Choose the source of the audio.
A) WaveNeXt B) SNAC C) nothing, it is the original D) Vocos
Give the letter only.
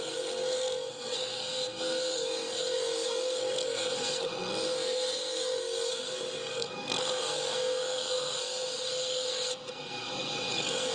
B